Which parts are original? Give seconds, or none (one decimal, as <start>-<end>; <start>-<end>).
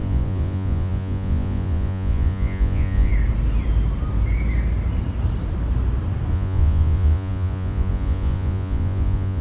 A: 3.1-6.3